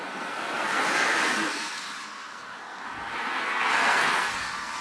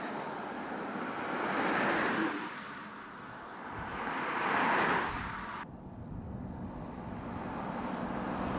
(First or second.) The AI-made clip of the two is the first